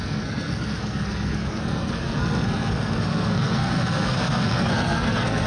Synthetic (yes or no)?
yes